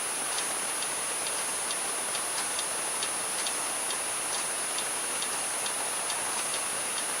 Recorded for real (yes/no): yes